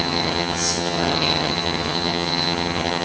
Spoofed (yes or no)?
yes